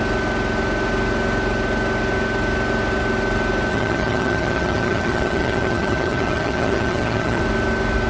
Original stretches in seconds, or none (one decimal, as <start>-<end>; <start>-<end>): 0.0-3.7; 7.4-8.1

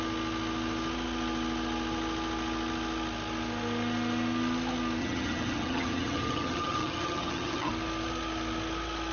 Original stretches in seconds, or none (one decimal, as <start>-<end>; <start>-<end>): 0.0-5.0; 7.7-9.1